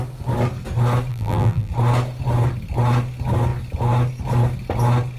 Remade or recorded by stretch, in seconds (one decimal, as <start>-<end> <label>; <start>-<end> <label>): 0.0-1.1 recorded; 1.1-1.7 remade; 1.7-5.2 recorded